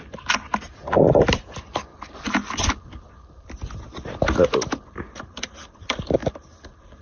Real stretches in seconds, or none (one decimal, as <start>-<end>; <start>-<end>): 0.0-7.0